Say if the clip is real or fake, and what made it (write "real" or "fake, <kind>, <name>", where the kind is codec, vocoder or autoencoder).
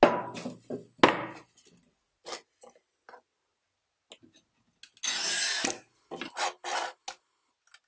real